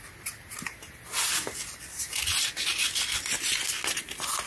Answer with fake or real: real